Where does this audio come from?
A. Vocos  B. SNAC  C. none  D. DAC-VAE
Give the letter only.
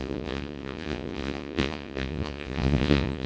A